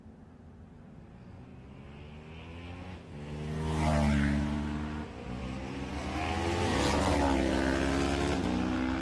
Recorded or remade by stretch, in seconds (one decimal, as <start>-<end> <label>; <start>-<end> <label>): 0.0-9.0 recorded

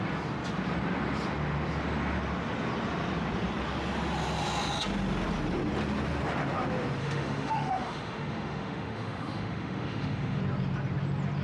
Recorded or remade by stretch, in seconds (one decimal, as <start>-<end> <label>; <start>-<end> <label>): 0.0-7.0 recorded; 7.0-10.4 remade; 10.4-11.4 recorded

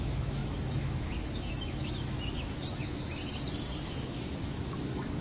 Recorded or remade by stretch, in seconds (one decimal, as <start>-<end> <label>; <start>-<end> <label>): 0.0-3.2 remade; 3.2-3.9 recorded; 3.9-5.2 remade

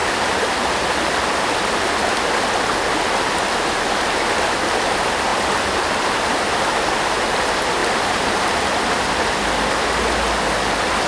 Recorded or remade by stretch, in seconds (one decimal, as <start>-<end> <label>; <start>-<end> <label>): 0.0-1.1 remade; 1.1-5.3 recorded; 5.3-6.4 remade; 6.4-7.8 recorded; 7.8-8.4 remade; 8.4-11.1 recorded